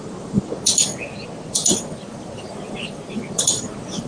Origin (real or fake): fake